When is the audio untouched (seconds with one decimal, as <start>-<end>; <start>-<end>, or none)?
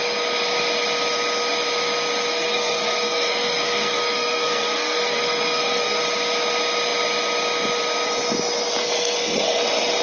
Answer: 0.0-2.3; 6.0-8.8; 9.6-10.0